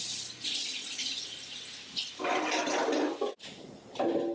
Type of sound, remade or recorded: recorded